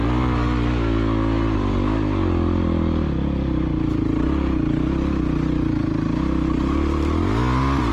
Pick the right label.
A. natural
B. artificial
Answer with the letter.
A